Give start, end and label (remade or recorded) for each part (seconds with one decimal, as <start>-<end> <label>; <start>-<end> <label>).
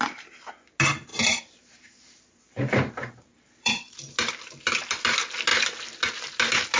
0.0-1.1 recorded; 1.1-3.9 remade; 3.9-6.8 recorded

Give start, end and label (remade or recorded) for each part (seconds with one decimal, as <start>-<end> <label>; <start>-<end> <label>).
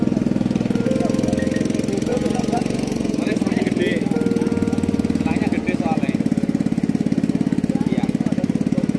0.0-2.1 recorded; 2.1-3.2 remade; 3.2-9.0 recorded